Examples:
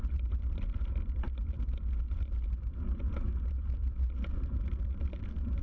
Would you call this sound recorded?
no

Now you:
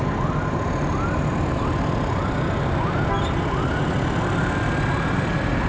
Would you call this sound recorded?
yes